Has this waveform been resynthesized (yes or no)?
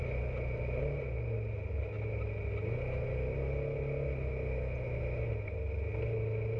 no